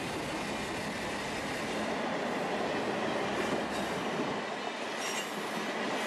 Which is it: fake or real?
real